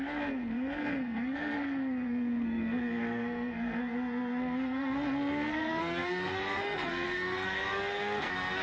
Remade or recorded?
remade